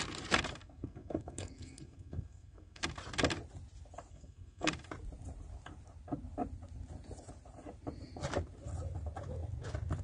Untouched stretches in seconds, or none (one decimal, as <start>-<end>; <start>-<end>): 0.0-0.6; 2.8-4.1; 4.7-10.0